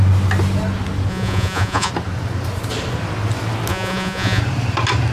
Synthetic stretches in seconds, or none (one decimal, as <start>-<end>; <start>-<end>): 1.1-1.9; 3.7-4.4